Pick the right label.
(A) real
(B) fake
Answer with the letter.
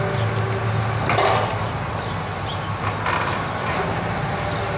A